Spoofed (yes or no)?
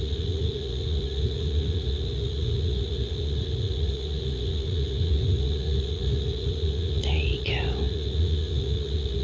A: yes